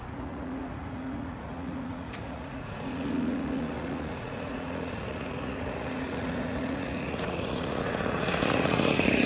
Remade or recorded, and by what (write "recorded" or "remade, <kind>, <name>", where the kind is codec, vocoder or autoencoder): remade, vocoder, Vocos